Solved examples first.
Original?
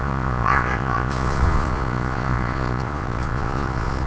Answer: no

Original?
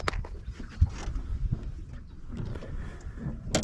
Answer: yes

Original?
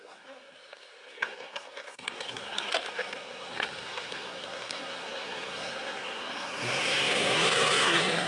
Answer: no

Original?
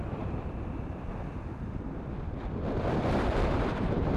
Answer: no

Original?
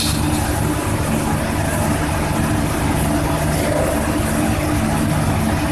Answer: yes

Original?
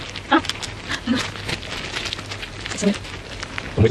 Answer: yes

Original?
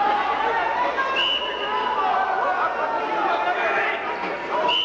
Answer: yes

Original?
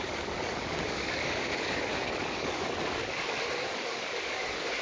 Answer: no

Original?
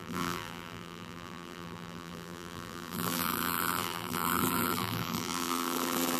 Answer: no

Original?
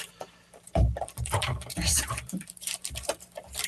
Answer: no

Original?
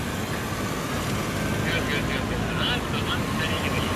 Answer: yes